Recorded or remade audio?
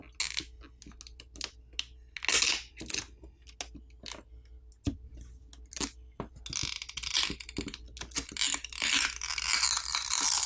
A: recorded